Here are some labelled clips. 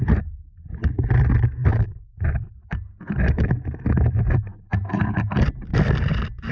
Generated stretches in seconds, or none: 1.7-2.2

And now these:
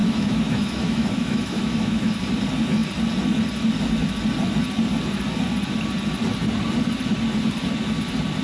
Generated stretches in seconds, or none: 0.0-2.2

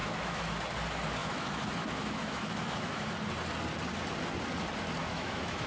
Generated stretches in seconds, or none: 0.0-0.6; 1.2-3.1; 5.0-5.7

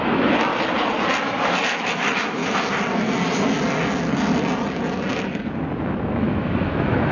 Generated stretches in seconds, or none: 0.0-0.5; 1.2-2.4; 5.8-7.1

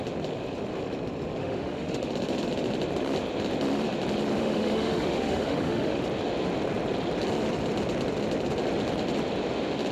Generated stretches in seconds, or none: 1.4-2.1; 4.4-6.0